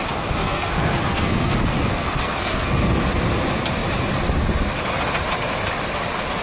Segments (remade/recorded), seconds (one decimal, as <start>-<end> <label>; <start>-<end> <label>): 0.0-0.4 recorded; 0.4-3.0 remade; 3.0-6.4 recorded